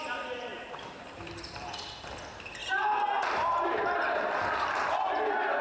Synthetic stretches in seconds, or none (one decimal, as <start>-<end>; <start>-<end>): 0.5-1.7; 2.6-4.8